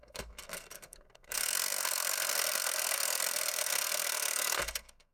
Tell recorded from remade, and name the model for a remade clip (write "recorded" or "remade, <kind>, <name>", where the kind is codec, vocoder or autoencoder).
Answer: remade, codec, SNAC